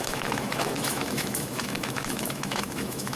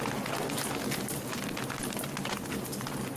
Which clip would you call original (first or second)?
second